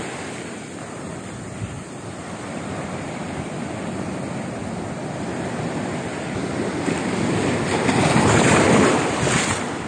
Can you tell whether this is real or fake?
fake